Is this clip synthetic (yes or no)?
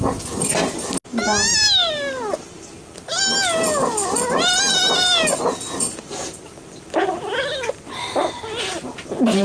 no